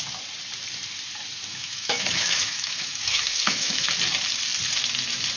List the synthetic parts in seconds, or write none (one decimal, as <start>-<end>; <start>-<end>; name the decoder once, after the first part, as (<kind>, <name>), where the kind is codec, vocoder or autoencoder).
1.5-3.9 (autoencoder, DAC-VAE)